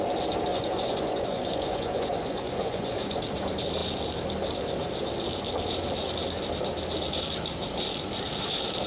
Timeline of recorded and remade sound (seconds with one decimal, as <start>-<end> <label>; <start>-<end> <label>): 0.0-0.5 recorded; 0.5-3.2 remade; 3.2-8.9 recorded

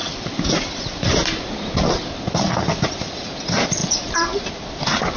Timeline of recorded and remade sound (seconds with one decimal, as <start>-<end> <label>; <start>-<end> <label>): 0.0-5.2 recorded

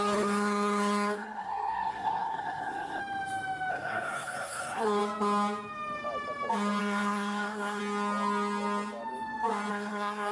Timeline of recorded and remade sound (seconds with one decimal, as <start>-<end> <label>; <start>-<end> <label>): 0.0-3.0 remade; 3.0-3.7 recorded; 3.7-5.0 remade; 5.0-6.8 recorded; 6.8-7.8 remade; 7.8-9.7 recorded; 9.7-10.3 remade

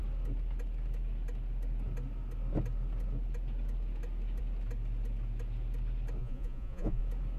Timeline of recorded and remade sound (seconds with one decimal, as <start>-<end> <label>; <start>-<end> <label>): 0.0-6.2 recorded; 6.2-7.0 remade; 7.0-7.4 recorded

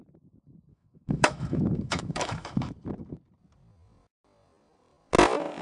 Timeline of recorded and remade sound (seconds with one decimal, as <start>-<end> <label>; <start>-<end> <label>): 0.0-0.7 recorded; 0.7-2.7 remade; 2.7-5.6 recorded

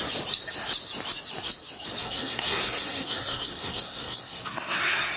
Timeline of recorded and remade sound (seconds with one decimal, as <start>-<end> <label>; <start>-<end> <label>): 0.0-2.0 recorded; 2.0-5.2 remade

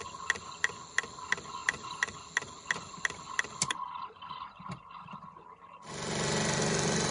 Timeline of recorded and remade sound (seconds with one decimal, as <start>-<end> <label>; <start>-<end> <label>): 0.0-7.1 recorded

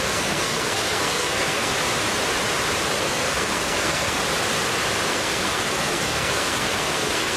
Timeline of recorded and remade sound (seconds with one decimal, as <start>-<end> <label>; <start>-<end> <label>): 0.0-1.7 remade; 1.7-3.0 recorded; 3.0-4.2 remade; 4.2-5.1 recorded; 5.1-7.4 remade